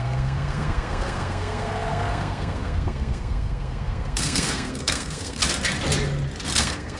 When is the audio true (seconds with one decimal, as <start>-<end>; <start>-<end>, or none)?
5.4-6.6